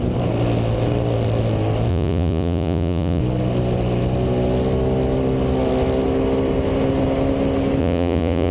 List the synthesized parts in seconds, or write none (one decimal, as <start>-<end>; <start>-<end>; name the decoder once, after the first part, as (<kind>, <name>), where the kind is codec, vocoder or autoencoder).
1.9-3.2 (vocoder, Vocos); 7.8-8.5